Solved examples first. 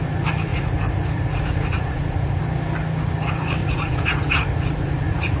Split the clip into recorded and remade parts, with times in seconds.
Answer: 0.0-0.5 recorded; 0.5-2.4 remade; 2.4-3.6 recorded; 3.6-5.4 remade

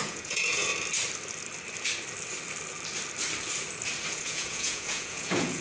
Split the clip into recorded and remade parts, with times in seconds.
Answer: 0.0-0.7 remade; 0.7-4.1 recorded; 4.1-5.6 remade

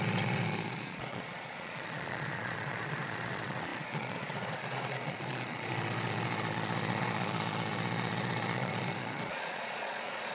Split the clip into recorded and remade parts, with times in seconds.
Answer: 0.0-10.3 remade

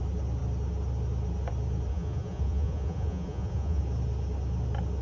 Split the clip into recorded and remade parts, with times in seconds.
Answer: 0.0-1.9 recorded; 1.9-3.8 remade; 3.8-5.0 recorded

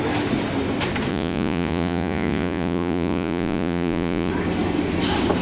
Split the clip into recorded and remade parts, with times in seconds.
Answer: 0.0-1.1 recorded; 1.1-4.3 remade; 4.3-5.4 recorded